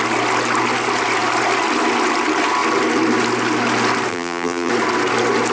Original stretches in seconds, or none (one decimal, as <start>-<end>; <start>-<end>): 0.0-4.1; 4.7-5.5